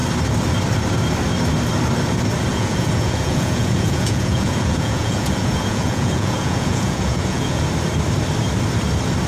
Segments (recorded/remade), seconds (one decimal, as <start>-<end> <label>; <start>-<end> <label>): 0.0-2.5 recorded; 2.5-7.6 remade; 7.6-9.3 recorded